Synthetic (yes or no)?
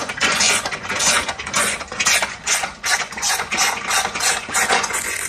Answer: yes